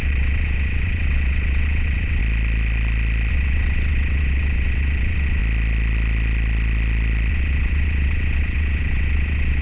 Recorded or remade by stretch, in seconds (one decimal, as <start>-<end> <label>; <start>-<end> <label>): 0.0-2.2 remade; 2.2-3.3 recorded; 3.3-5.4 remade; 5.4-7.3 recorded; 7.3-9.6 remade